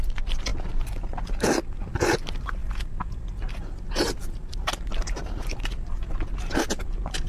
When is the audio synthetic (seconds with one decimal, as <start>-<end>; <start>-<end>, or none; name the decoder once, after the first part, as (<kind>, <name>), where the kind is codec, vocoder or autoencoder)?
none